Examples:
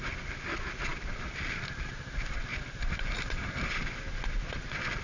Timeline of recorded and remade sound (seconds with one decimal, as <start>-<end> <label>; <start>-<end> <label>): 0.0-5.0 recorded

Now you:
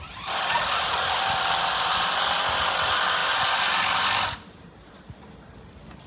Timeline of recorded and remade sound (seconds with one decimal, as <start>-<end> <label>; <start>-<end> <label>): 0.0-6.1 recorded

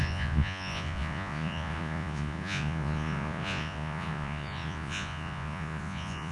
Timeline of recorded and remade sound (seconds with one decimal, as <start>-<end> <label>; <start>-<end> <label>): 0.0-6.3 remade

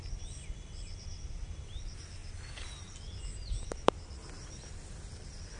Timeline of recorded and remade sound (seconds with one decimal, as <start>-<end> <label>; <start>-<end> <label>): 0.0-2.2 recorded; 2.2-5.6 remade

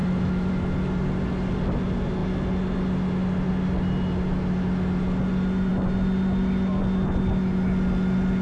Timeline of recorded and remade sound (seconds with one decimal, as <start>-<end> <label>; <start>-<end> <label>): 0.0-0.5 remade; 0.5-8.4 recorded

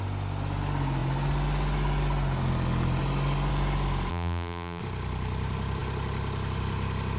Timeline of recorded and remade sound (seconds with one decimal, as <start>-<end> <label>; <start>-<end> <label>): 0.0-4.1 recorded; 4.1-4.8 remade; 4.8-7.2 recorded

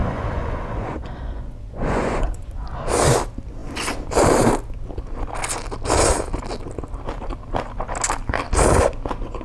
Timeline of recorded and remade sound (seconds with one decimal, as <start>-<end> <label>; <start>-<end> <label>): 0.0-2.5 remade; 2.5-9.4 recorded

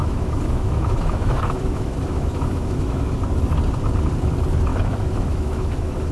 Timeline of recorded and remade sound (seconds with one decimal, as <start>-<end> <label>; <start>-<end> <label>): 0.0-3.1 remade; 3.1-4.7 recorded; 4.7-6.1 remade